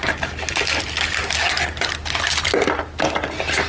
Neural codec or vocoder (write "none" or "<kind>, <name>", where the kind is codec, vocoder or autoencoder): none